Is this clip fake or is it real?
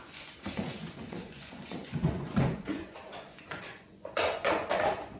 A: fake